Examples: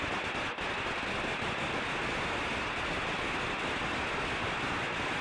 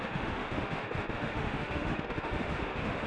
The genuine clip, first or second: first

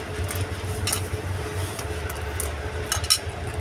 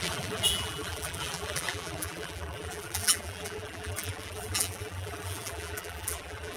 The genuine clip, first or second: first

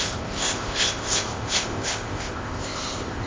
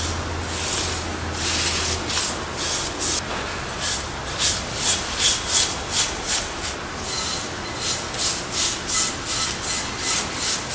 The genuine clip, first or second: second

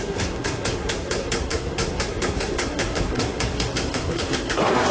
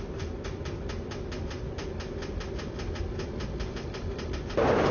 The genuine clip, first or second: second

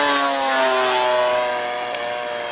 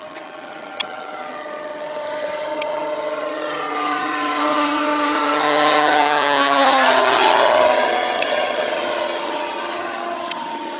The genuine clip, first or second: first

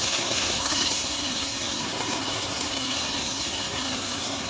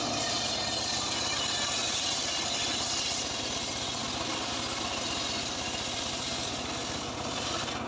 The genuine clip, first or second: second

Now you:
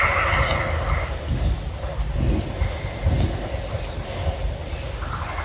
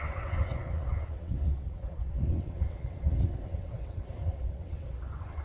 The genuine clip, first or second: first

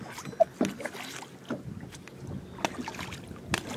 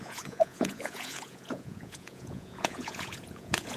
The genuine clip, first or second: first